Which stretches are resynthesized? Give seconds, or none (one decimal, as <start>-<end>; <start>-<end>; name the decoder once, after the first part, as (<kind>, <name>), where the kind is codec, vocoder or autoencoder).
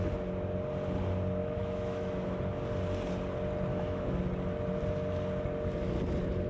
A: 1.4-2.4 (autoencoder, DAC-VAE); 3.7-4.2